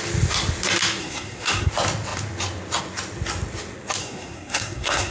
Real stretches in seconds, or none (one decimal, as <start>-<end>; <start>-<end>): 0.0-1.0; 1.7-4.0